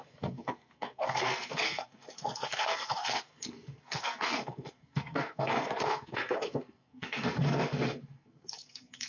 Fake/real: fake